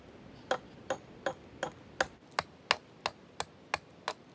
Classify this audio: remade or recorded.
recorded